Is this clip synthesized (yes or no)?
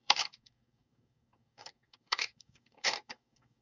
yes